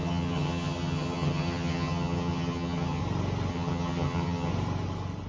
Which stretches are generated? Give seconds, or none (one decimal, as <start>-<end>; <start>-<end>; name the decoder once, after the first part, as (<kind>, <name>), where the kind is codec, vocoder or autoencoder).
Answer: 0.0-3.0 (vocoder, HiFi-GAN); 3.5-4.5